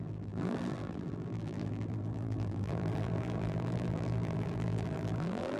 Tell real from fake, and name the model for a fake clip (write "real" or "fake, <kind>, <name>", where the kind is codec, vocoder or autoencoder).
fake, vocoder, BigVGAN v2